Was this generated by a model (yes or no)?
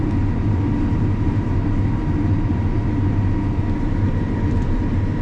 no